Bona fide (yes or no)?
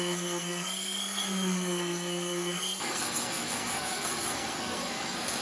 no